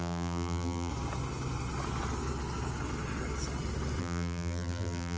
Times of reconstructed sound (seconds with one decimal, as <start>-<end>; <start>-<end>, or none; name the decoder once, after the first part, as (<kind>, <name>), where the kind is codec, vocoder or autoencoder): 0.0-0.9 (vocoder, BigVGAN v2); 4.0-5.2